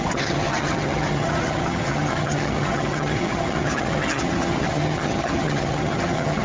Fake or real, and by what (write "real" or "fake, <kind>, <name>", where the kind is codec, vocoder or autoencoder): fake, vocoder, HiFi-GAN